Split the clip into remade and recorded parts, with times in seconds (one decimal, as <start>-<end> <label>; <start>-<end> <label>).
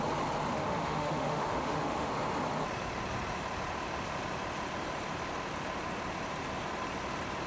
0.0-0.5 recorded; 0.5-2.1 remade; 2.1-7.5 recorded